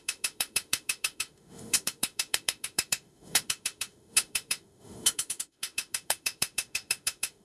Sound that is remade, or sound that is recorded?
remade